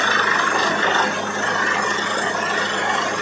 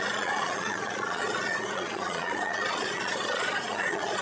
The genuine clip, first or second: first